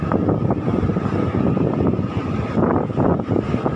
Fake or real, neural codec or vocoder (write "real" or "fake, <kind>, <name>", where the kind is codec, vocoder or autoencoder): real